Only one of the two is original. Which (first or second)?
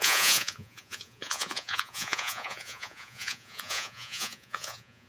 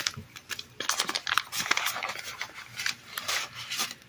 second